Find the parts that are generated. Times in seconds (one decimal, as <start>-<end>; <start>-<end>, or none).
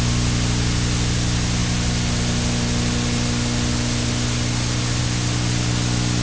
none